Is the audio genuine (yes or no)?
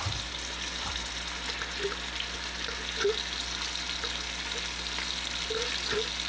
yes